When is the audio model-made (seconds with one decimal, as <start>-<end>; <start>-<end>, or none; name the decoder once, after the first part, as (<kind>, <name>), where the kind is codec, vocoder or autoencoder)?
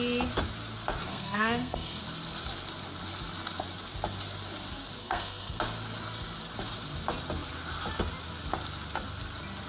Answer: 1.1-2.0 (codec, SNAC); 5.0-5.6